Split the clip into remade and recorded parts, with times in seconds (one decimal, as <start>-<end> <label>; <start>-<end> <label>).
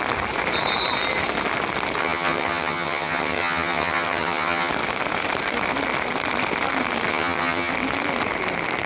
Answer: 0.0-2.0 recorded; 2.0-4.7 remade; 4.7-7.1 recorded; 7.1-7.7 remade; 7.7-8.9 recorded